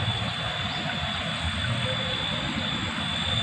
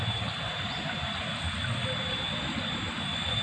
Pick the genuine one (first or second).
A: first